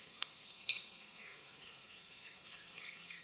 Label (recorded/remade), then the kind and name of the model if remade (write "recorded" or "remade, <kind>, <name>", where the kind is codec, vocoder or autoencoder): remade, codec, SNAC